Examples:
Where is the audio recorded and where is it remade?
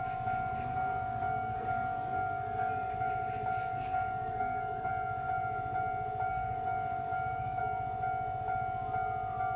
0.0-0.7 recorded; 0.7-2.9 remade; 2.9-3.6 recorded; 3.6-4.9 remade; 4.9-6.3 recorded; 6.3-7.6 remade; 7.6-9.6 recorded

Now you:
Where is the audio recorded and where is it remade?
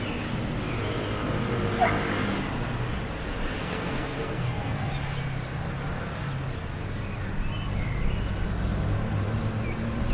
0.0-3.6 recorded; 3.6-4.9 remade; 4.9-10.1 recorded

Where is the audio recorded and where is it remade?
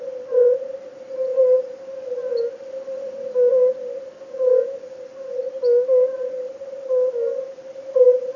0.0-8.4 recorded